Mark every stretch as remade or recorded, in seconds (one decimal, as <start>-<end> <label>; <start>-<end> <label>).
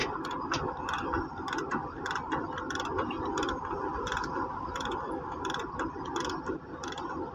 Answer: 0.0-7.3 recorded